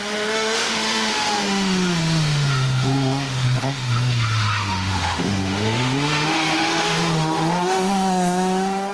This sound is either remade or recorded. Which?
remade